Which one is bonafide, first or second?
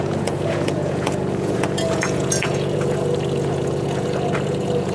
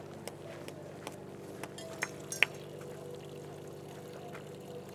second